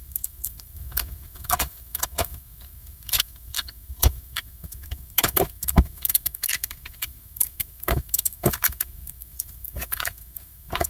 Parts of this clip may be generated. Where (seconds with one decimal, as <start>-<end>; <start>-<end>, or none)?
0.0-10.9